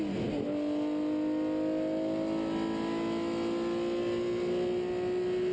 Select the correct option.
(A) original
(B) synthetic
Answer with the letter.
A